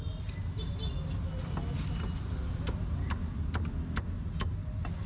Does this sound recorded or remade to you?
recorded